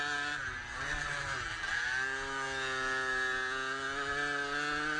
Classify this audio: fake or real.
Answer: real